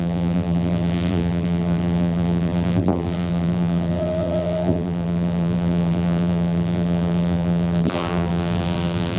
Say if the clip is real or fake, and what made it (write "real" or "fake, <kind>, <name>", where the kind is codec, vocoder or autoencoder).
fake, vocoder, BigVGAN v2